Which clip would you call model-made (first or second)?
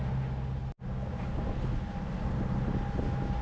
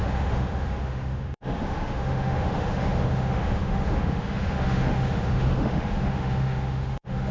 second